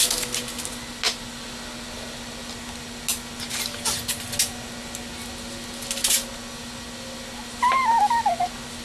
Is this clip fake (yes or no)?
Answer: no